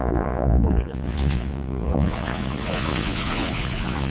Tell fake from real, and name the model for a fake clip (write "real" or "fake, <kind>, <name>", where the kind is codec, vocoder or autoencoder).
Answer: fake, vocoder, Vocos